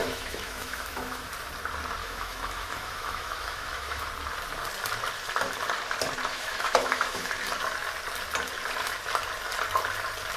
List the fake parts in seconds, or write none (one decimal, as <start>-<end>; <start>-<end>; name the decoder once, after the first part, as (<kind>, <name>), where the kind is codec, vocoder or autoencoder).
0.0-1.3 (autoencoder, DAC-VAE); 2.0-4.1; 6.3-7.3